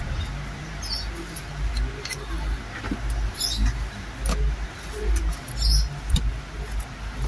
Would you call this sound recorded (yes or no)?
yes